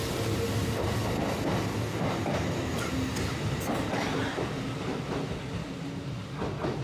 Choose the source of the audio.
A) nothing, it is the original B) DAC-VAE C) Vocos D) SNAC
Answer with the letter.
A